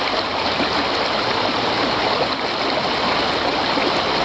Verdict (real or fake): real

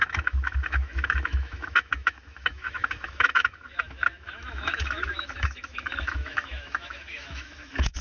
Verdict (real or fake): fake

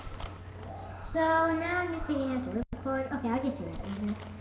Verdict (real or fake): fake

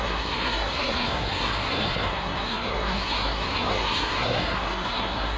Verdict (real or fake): fake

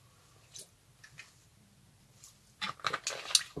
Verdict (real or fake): real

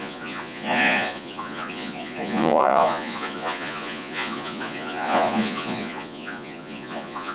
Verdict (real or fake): fake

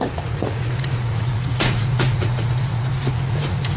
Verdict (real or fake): fake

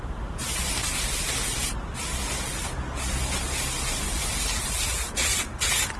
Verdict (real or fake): real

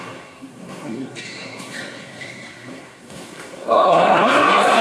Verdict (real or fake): fake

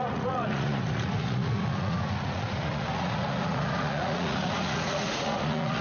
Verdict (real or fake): fake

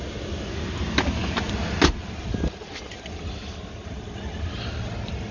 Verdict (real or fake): real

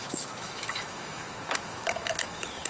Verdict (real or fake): fake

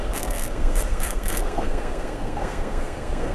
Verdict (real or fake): fake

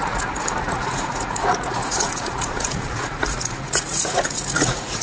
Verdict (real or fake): fake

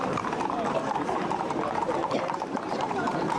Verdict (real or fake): fake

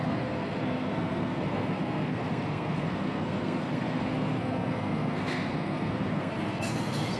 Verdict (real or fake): fake